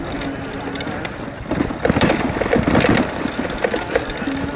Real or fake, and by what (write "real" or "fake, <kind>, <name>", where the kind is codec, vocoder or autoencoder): real